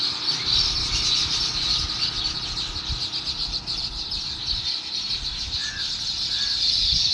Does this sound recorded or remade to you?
recorded